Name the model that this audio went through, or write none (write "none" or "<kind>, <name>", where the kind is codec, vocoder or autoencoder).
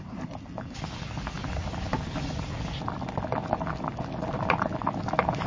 none